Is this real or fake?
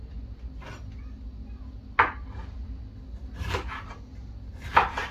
real